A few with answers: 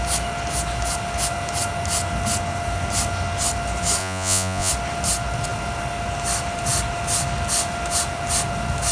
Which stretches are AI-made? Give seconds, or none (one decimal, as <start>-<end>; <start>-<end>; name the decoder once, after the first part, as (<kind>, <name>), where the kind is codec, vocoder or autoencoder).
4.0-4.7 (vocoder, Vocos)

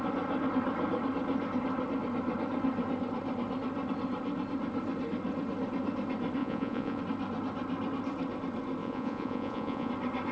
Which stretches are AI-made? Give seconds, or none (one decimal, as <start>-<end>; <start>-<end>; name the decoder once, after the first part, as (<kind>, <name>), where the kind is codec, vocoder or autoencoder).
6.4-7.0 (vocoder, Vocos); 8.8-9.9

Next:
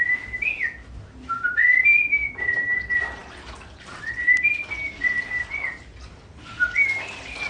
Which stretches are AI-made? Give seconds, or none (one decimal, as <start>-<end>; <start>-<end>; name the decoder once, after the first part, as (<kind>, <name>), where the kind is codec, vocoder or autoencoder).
none